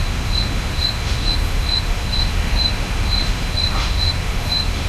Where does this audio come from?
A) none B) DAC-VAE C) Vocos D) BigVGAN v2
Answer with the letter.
B